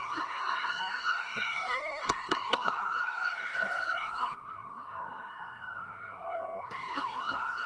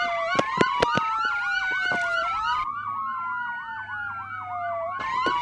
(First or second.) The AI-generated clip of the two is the first